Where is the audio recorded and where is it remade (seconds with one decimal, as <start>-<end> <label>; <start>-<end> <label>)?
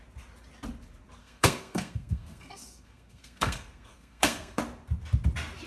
0.0-1.2 recorded; 1.2-4.6 remade; 4.6-5.7 recorded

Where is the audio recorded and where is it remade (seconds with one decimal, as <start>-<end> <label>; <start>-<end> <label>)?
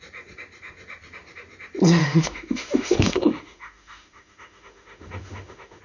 0.0-2.0 recorded; 2.0-5.8 remade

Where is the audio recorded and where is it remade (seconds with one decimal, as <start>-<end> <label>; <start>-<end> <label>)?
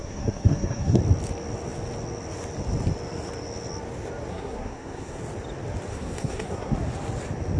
0.0-1.0 remade; 1.0-4.3 recorded; 4.3-5.2 remade; 5.2-5.9 recorded; 5.9-6.7 remade; 6.7-7.6 recorded